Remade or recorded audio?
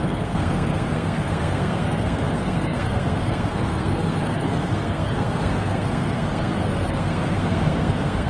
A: remade